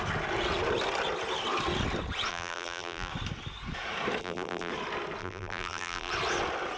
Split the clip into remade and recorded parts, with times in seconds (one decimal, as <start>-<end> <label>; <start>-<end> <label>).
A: 0.0-2.3 recorded; 2.3-3.1 remade; 3.1-4.2 recorded; 4.2-4.7 remade; 4.7-5.2 recorded; 5.2-6.1 remade; 6.1-6.8 recorded